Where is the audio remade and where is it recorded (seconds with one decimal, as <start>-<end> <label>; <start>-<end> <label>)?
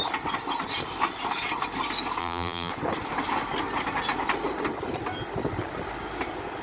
0.0-2.2 recorded; 2.2-2.7 remade; 2.7-6.6 recorded